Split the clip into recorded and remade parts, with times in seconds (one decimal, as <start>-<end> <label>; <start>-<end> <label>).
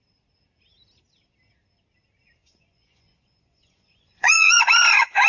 0.0-2.3 recorded; 2.3-5.3 remade